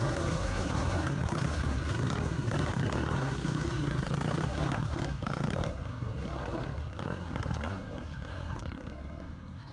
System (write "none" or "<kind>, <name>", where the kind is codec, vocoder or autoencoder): codec, SNAC